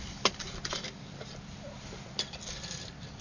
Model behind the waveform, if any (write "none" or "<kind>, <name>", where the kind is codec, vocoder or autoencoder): none